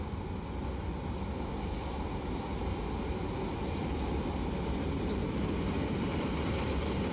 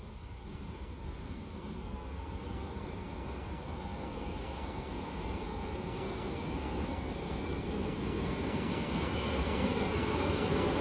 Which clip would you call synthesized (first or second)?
second